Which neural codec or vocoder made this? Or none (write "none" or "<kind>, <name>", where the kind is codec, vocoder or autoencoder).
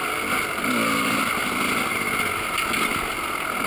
none